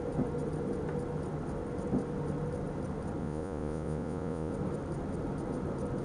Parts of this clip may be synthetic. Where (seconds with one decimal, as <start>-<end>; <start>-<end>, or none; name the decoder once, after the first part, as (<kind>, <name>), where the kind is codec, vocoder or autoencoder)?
3.2-4.5 (vocoder, Vocos)